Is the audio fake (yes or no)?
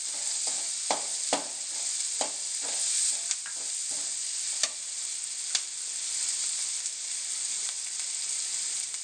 no